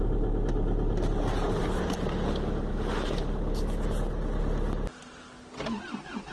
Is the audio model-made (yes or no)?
no